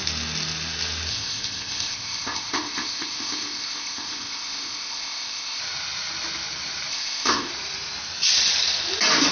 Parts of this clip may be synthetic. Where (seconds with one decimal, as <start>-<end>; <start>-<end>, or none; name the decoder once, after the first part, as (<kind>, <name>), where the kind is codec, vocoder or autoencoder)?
1.1-5.6 (codec, ZipCodec); 6.9-7.5